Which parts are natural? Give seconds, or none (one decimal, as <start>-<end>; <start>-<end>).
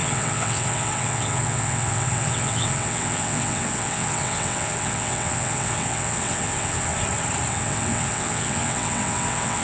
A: 6.9-7.5